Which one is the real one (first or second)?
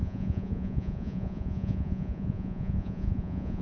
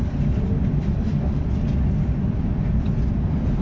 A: second